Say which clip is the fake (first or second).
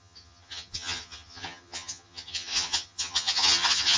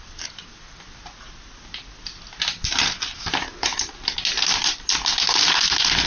first